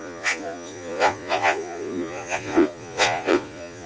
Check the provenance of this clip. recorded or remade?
remade